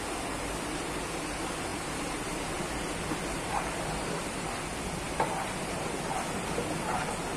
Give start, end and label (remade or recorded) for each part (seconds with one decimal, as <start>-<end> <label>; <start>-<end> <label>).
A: 0.0-7.4 recorded